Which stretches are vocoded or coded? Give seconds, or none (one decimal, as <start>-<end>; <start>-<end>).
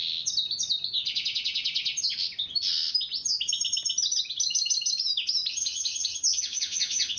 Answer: 5.5-7.2